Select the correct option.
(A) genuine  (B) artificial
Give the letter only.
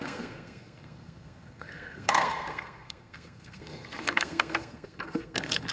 B